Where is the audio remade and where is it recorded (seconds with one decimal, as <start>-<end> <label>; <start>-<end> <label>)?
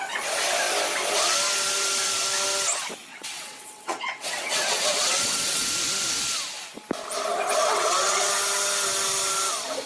0.0-3.1 recorded; 3.1-5.7 remade; 5.7-7.6 recorded; 7.6-8.3 remade; 8.3-9.9 recorded